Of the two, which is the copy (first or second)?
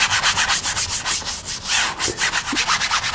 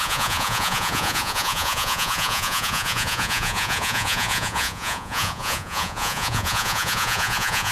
second